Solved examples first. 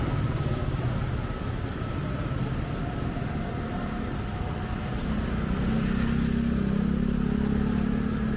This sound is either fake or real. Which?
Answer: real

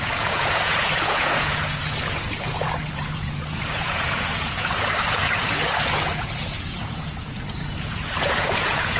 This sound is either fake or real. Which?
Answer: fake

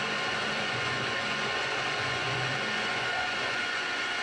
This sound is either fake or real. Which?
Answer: fake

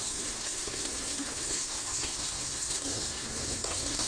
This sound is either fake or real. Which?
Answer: fake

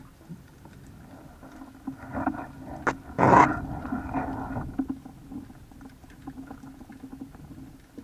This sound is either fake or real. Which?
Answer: real